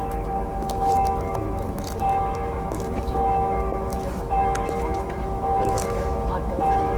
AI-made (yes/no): yes